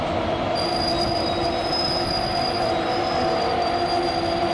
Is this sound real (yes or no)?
yes